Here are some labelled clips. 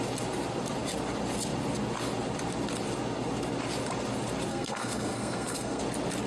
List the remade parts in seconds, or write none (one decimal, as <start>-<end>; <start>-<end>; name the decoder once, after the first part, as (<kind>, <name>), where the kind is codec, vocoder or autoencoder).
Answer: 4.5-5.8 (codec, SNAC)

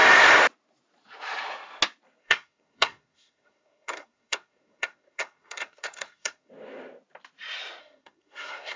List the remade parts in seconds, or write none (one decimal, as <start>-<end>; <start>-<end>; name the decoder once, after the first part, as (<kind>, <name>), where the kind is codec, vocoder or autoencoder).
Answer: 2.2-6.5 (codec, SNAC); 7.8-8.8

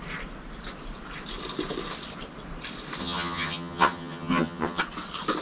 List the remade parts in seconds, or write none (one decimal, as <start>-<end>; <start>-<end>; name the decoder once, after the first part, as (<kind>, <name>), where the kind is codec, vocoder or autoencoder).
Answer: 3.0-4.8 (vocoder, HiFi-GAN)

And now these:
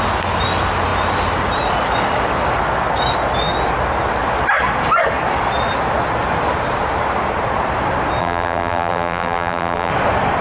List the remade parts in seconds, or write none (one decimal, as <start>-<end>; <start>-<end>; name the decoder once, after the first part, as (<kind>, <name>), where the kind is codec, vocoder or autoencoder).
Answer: 8.2-9.9 (vocoder, BigVGAN v2)

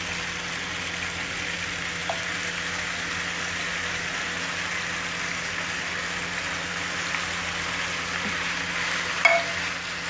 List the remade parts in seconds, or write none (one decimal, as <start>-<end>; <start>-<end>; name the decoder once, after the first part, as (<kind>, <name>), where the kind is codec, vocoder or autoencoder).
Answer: 2.0-6.7 (vocoder, BigVGAN v2)

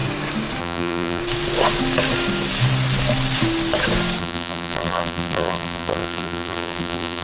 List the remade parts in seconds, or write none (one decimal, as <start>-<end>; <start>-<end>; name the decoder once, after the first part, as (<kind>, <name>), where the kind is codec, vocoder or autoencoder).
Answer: 0.6-1.2 (vocoder, BigVGAN v2); 4.2-7.2